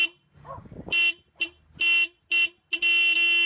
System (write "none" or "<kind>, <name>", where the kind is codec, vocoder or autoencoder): none